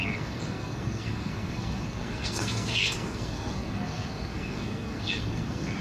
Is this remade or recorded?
remade